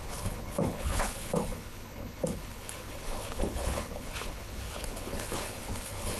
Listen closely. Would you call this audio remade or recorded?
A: remade